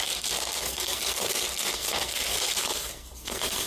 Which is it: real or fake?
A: fake